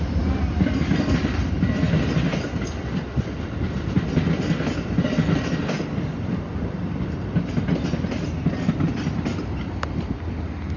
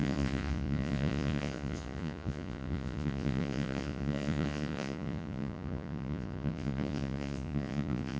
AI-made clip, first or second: second